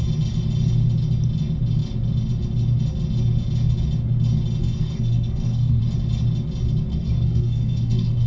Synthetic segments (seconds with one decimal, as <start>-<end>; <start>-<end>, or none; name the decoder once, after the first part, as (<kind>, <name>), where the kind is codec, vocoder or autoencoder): 4.6-5.8 (codec, SNAC); 6.9-8.3